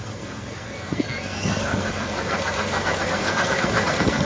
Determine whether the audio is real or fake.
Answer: fake